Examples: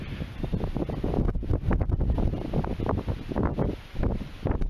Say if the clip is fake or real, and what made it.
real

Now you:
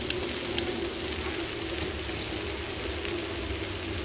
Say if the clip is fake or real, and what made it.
real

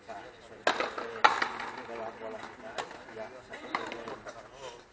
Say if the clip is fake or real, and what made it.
real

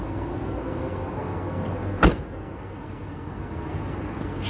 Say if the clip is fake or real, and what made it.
fake, codec, SNAC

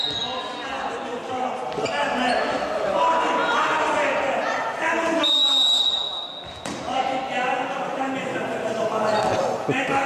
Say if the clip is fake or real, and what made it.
real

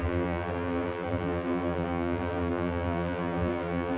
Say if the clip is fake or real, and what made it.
fake, vocoder, BigVGAN v2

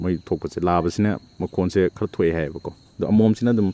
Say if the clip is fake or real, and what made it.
real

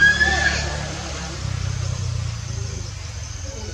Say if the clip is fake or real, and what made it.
fake, vocoder, BigVGAN v2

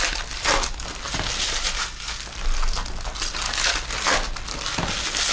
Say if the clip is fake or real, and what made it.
real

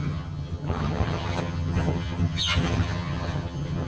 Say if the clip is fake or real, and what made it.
fake, vocoder, HiFi-GAN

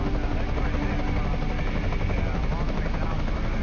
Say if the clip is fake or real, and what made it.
real